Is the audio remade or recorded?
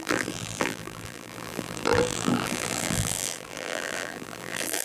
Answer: remade